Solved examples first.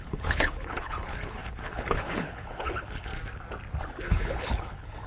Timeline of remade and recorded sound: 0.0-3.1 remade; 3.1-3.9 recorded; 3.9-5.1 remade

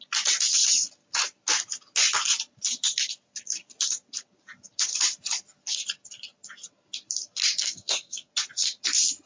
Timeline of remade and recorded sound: 0.0-7.6 recorded; 7.6-8.3 remade; 8.3-9.3 recorded

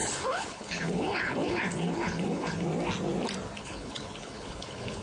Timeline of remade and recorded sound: 0.0-2.7 remade; 2.7-3.6 recorded; 3.6-5.0 remade

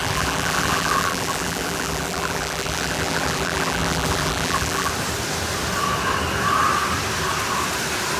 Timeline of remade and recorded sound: 0.0-4.9 remade; 4.9-8.2 recorded

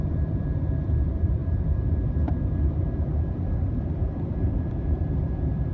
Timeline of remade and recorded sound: 0.0-5.7 remade

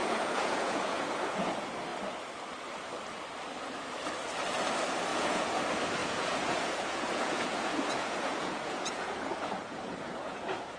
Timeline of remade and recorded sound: 0.0-1.5 remade; 1.5-5.1 recorded; 5.1-5.6 remade; 5.6-6.0 recorded; 6.0-10.8 remade

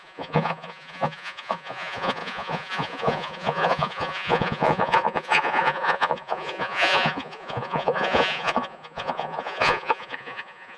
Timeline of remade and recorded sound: 0.0-10.8 remade

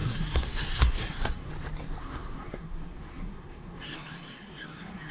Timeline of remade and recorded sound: 0.0-1.5 remade; 1.5-2.0 recorded; 2.0-5.1 remade